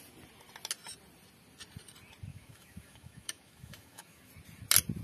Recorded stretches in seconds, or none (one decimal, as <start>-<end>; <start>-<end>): 0.0-2.3; 4.3-5.0